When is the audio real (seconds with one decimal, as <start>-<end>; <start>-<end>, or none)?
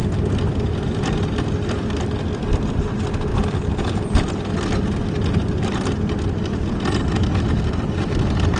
0.0-8.6